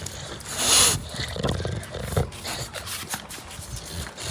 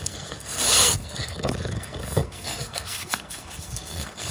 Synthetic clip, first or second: second